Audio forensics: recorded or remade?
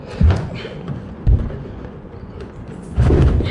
remade